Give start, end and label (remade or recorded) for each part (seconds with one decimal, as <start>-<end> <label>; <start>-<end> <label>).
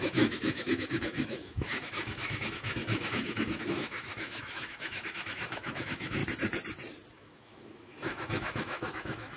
0.0-6.2 remade; 6.2-7.1 recorded; 7.1-9.4 remade